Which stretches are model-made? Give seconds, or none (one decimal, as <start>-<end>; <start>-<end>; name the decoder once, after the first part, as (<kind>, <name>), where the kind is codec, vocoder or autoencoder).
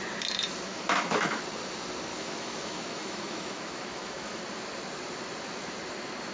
0.7-1.4 (autoencoder, DAC-VAE); 2.1-4.4